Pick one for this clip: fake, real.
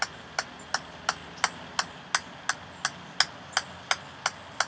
real